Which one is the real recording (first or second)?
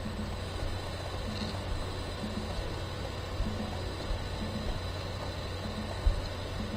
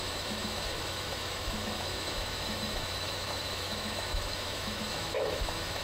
first